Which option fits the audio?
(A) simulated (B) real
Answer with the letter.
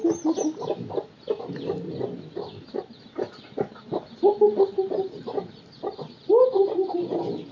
B